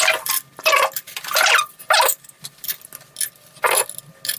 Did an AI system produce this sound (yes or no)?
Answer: no